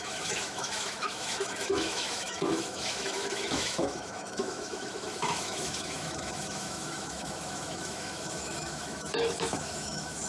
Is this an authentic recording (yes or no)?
no